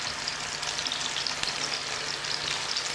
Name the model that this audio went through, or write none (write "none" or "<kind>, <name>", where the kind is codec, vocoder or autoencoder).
none